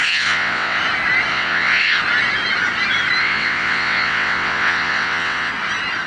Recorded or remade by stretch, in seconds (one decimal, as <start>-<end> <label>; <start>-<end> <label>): 0.0-0.8 remade; 0.8-1.3 recorded; 1.3-2.0 remade; 2.0-3.2 recorded; 3.2-5.5 remade; 5.5-6.1 recorded